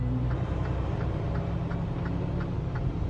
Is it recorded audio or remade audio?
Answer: recorded